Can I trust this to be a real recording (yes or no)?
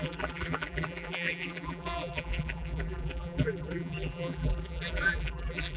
no